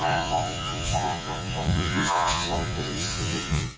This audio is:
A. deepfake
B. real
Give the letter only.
A